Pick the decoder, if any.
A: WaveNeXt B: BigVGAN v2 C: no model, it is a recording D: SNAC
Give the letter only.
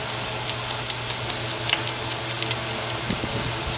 C